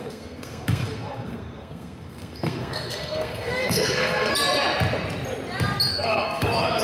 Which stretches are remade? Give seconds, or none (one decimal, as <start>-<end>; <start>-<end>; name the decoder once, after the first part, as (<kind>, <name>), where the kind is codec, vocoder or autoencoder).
0.0-4.3 (codec, SNAC); 5.9-6.8